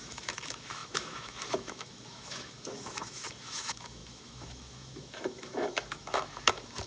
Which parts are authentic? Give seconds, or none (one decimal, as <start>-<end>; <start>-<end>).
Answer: none